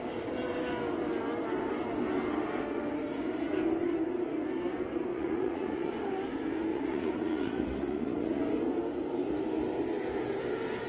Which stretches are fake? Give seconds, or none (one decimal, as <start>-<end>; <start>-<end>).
5.1-5.9; 6.7-8.4